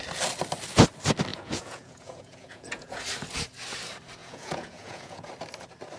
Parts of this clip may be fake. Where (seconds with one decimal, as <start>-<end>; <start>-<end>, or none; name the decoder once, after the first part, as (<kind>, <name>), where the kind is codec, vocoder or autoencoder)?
1.3-3.0 (vocoder, Vocos); 4.2-5.3